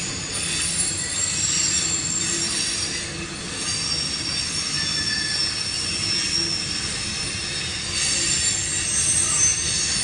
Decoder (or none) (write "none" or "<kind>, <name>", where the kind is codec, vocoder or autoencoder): none